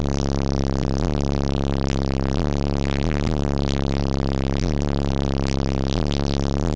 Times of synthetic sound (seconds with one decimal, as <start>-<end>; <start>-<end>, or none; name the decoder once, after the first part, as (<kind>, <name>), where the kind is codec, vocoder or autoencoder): none